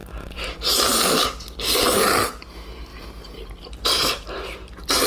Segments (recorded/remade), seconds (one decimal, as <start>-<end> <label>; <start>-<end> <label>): 0.0-2.9 recorded; 2.9-5.1 remade